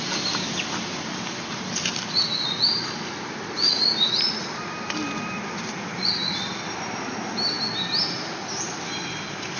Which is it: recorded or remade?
recorded